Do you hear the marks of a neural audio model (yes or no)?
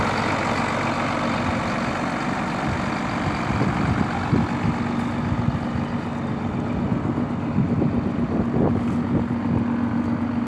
no